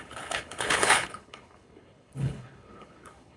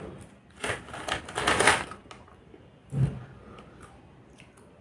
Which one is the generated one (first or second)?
first